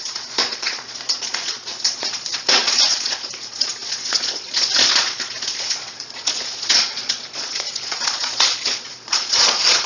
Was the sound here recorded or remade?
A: remade